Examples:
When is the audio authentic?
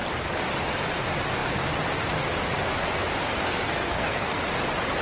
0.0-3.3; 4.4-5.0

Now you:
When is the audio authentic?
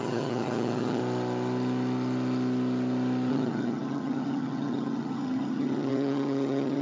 1.0-3.3